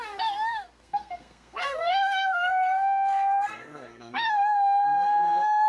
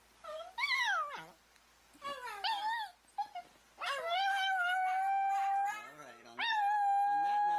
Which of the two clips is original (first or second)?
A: second